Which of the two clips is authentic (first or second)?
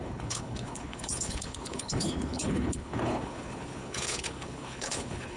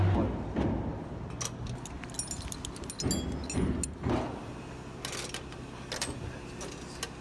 second